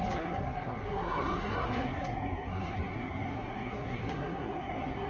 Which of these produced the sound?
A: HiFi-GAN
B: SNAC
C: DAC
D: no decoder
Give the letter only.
B